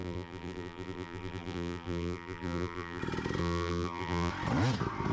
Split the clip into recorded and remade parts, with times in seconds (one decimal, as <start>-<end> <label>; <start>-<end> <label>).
0.0-3.0 remade; 3.0-3.4 recorded; 3.4-4.3 remade; 4.3-5.1 recorded